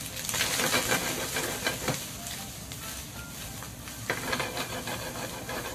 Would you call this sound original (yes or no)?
yes